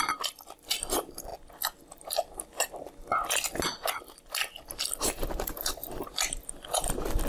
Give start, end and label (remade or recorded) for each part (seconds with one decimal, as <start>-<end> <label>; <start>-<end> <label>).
0.0-1.3 remade; 1.3-5.0 recorded; 5.0-7.3 remade